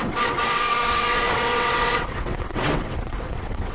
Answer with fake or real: fake